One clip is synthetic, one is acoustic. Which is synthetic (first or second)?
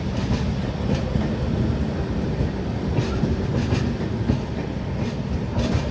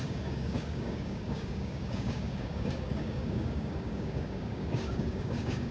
second